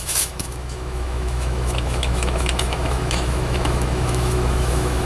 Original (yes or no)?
no